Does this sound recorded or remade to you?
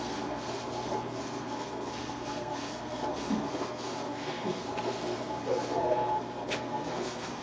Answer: remade